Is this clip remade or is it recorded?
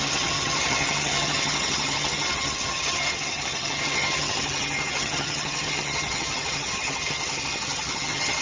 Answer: remade